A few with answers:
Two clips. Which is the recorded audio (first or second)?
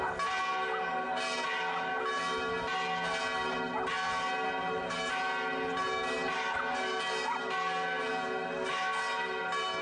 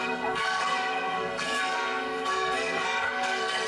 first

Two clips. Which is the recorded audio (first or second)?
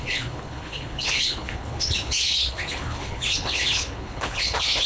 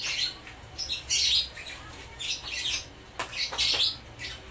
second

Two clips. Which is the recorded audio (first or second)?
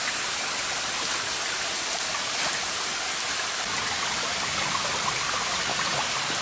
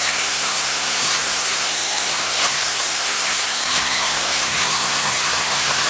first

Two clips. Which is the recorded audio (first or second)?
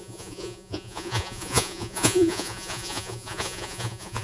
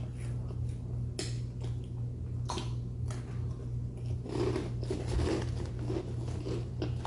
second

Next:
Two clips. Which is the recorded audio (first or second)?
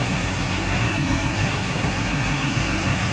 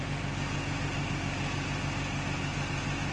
second